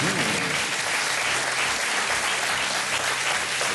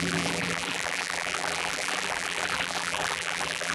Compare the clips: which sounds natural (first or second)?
first